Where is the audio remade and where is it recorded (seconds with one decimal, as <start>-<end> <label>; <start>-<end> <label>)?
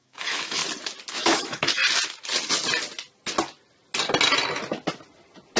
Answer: 0.0-0.6 remade; 0.6-1.1 recorded; 1.1-1.8 remade; 1.8-5.6 recorded